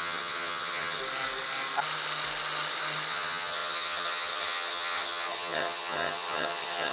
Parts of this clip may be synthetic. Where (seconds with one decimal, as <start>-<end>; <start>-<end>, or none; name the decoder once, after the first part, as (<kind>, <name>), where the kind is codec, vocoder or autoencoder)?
0.0-1.0 (vocoder, HiFi-GAN); 3.1-6.9